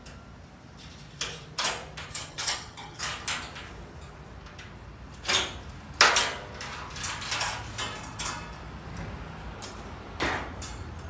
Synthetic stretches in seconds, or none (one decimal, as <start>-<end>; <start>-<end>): 2.1-3.0